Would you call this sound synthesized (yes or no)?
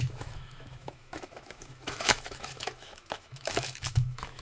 yes